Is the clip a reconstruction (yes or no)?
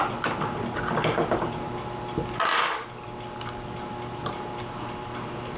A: no